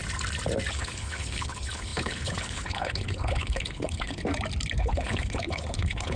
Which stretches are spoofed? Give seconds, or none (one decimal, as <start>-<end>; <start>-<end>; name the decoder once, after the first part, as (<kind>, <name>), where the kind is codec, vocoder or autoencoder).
0.7-4.2 (codec, HILCodec); 4.8-6.2